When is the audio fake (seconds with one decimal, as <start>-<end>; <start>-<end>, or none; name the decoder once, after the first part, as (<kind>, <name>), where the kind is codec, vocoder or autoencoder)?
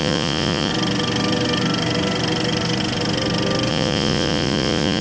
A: 0.0-0.7 (vocoder, Vocos); 3.7-5.0